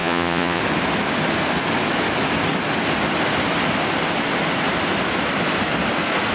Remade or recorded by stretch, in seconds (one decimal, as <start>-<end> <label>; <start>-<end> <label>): 0.0-0.6 remade; 0.6-6.3 recorded